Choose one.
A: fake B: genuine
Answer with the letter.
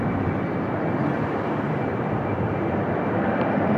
A